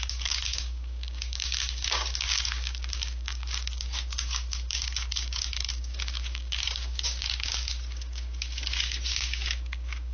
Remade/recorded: remade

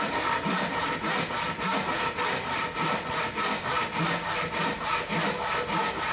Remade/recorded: recorded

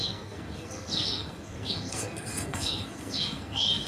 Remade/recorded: remade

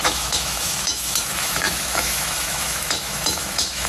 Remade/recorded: remade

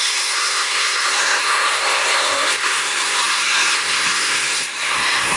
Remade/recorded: remade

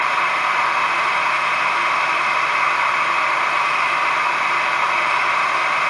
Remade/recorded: recorded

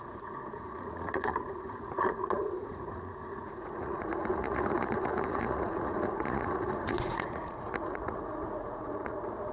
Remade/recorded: remade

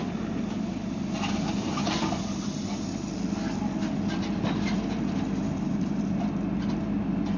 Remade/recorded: recorded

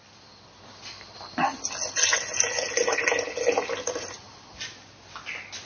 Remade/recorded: recorded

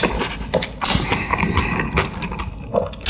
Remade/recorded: recorded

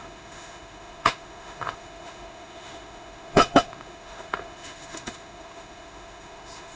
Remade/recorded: remade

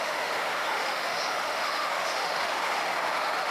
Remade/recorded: remade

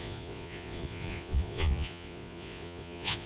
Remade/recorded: remade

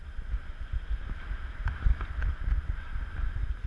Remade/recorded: recorded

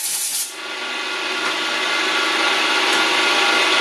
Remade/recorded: recorded